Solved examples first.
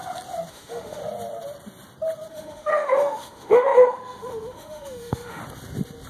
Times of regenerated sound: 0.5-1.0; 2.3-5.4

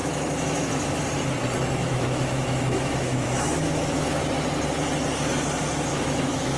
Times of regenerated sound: 0.0-1.0; 1.8-4.2; 5.9-6.6

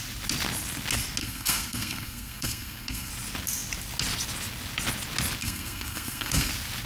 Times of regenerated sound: 1.2-3.1; 5.4-6.5